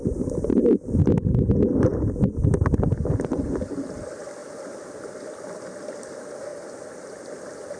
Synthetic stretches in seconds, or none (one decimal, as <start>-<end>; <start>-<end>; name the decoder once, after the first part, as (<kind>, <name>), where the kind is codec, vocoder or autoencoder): none